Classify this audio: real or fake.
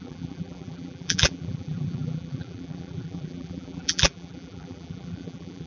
fake